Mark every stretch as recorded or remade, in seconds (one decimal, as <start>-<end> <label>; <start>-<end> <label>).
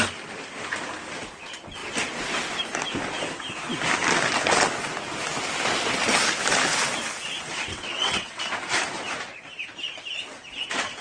0.0-7.7 recorded; 7.7-8.4 remade; 8.4-11.0 recorded